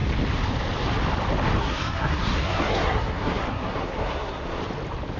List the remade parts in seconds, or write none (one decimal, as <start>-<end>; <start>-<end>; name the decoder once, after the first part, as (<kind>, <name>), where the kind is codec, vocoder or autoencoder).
1.6-4.6 (codec, SNAC)